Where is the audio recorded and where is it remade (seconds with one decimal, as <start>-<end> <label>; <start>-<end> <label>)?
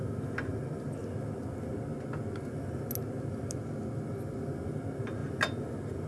0.0-6.1 recorded